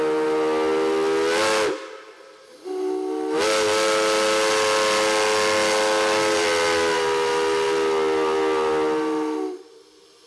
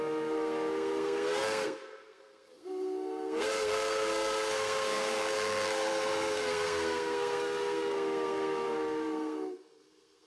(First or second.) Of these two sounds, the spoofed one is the second